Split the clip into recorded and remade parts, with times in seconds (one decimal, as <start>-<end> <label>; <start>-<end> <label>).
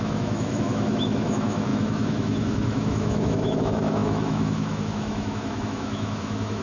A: 0.0-6.6 remade